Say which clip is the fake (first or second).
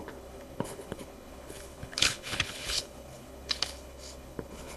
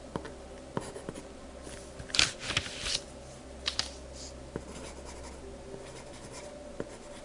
first